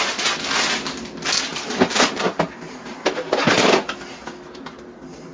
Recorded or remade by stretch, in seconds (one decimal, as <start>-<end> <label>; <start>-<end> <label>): 0.0-1.5 recorded; 1.5-3.1 remade; 3.1-5.3 recorded